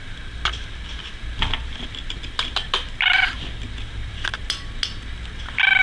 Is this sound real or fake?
real